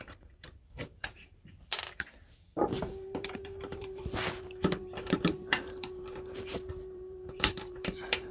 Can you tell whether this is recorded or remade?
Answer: remade